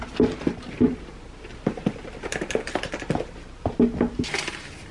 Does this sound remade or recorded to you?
recorded